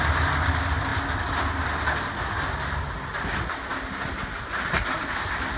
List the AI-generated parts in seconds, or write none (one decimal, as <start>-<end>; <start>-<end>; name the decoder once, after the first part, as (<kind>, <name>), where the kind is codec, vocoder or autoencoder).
none